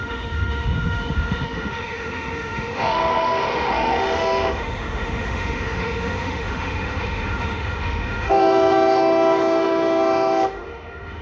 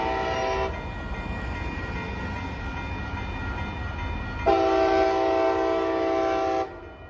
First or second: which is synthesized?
first